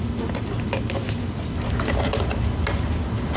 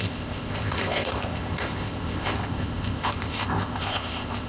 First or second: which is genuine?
first